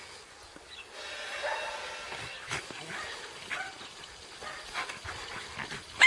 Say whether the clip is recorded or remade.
recorded